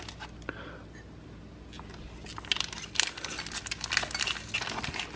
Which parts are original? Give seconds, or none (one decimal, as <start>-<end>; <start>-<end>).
0.0-5.2